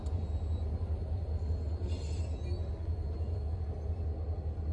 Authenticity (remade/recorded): recorded